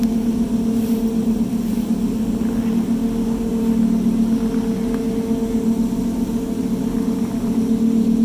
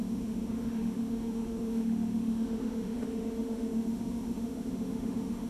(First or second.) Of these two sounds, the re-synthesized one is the second